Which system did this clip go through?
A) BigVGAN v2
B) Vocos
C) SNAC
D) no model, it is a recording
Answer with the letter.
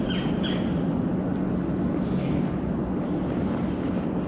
D